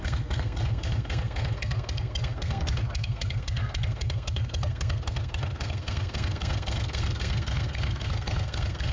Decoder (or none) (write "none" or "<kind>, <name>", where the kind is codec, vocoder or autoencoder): codec, SNAC